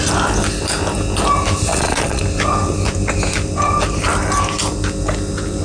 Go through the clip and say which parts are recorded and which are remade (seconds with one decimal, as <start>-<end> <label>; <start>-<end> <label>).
0.0-1.7 recorded; 1.7-2.2 remade; 2.2-5.6 recorded